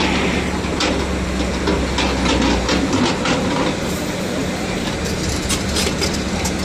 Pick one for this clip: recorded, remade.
recorded